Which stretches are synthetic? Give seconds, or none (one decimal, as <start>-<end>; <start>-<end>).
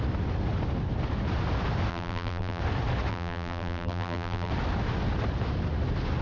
1.9-2.6; 3.1-4.5